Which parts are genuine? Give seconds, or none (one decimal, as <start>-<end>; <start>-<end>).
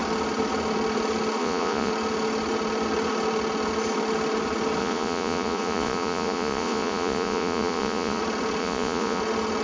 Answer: 0.0-1.4; 1.9-4.8; 8.2-8.6; 9.2-9.6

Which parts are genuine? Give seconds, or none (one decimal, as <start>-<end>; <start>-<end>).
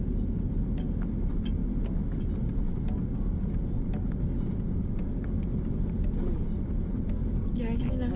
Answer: 0.0-8.2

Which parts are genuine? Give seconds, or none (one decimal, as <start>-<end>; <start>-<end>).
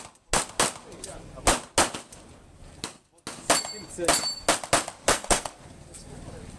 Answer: 0.0-5.1; 5.6-6.6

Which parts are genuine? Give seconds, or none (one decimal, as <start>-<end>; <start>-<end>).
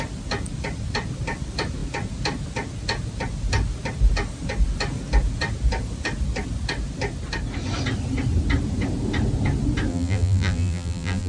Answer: 0.0-9.9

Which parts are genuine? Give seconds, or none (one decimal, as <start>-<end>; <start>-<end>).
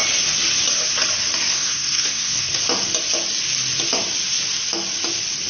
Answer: 0.0-1.5; 2.6-5.5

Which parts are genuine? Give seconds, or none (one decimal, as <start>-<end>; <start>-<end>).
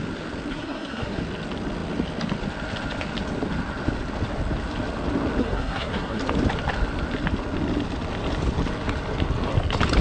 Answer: 0.0-0.5; 1.2-5.4; 6.2-10.0